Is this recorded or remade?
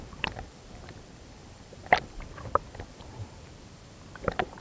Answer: remade